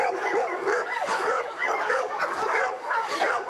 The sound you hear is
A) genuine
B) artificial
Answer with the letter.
B